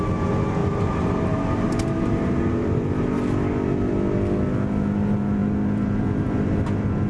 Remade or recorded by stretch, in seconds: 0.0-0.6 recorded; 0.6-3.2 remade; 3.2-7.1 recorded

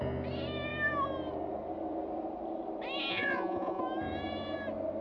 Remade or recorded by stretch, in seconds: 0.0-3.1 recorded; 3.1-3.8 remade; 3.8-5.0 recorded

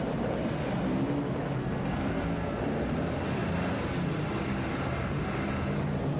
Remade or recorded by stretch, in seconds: 0.0-1.6 recorded; 1.6-2.6 remade; 2.6-6.2 recorded